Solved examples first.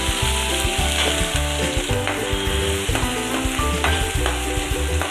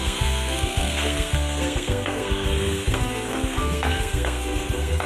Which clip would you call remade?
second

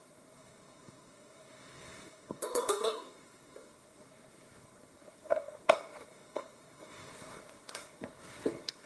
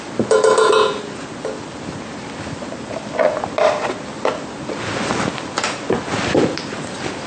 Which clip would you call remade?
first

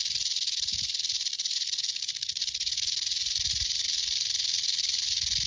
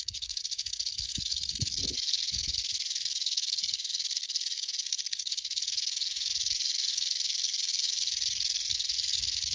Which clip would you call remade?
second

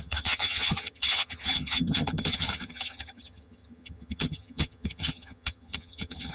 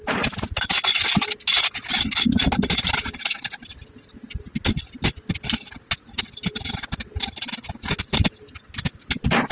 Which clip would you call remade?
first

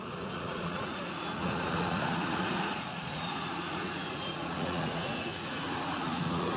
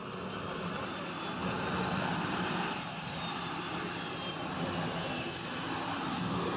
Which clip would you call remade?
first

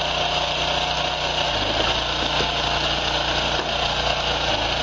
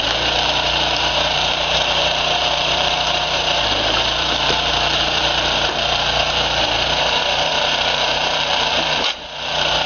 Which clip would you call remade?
second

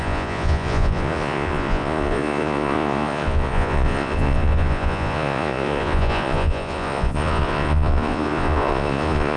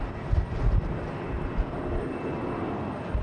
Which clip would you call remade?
first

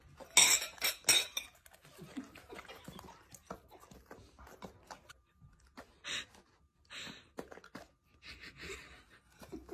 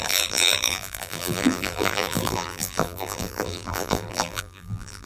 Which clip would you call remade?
second